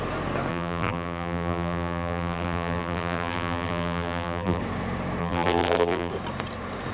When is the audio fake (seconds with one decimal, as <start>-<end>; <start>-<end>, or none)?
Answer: 0.5-4.6; 5.2-6.1